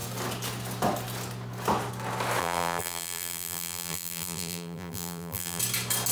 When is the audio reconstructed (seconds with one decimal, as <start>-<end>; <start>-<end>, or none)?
2.4-5.6